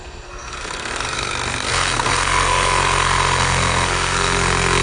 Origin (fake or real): fake